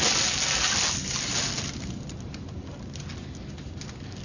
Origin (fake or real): real